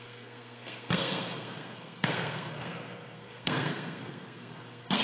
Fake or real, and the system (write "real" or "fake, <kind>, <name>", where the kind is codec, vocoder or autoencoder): fake, codec, SNAC